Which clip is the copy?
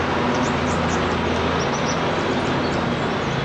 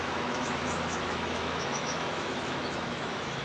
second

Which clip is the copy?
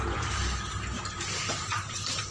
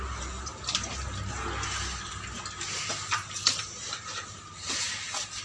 first